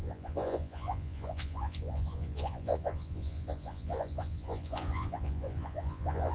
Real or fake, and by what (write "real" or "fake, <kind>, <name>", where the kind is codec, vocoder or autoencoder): fake, vocoder, Vocos